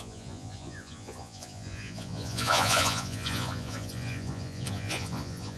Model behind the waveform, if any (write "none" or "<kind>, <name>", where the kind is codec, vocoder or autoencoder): vocoder, Vocos